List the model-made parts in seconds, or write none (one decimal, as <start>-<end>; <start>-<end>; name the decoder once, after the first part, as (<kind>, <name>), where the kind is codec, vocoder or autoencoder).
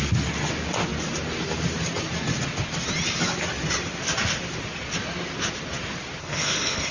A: 6.2-6.9 (codec, HILCodec)